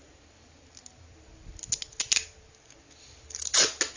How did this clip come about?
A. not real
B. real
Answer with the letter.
B